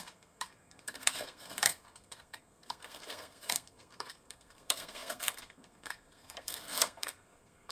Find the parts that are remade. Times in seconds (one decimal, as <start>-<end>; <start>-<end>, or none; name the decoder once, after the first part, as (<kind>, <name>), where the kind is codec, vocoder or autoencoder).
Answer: 0.0-7.7 (codec, SNAC)